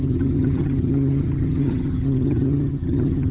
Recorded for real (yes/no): no